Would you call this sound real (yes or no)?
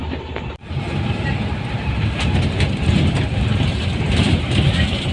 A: no